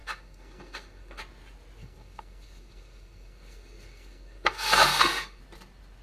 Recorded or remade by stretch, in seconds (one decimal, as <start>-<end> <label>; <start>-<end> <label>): 0.0-1.2 remade; 1.2-1.8 recorded; 1.8-5.4 remade; 5.4-6.0 recorded